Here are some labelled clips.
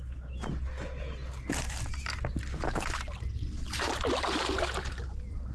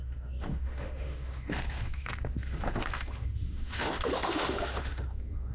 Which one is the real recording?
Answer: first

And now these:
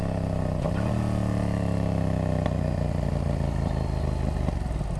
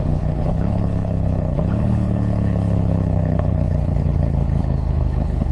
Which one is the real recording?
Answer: first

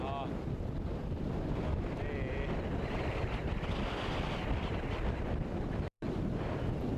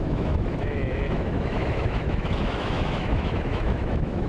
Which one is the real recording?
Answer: first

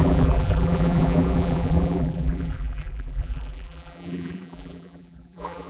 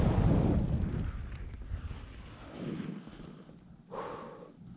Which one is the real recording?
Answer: second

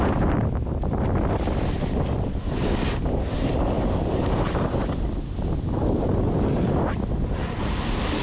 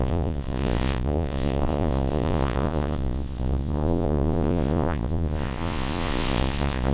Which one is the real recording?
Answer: first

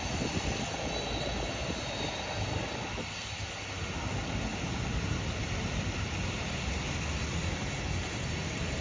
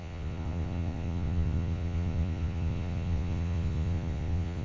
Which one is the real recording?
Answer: first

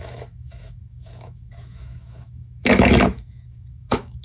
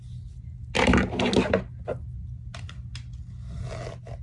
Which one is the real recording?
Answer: second